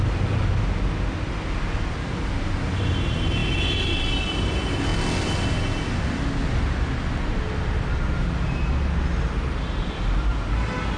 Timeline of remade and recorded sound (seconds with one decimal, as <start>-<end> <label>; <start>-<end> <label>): 0.0-11.0 recorded